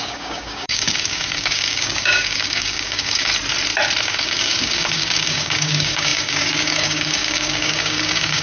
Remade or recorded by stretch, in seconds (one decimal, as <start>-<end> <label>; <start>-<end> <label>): 0.0-3.3 remade; 3.3-4.0 recorded; 4.0-8.4 remade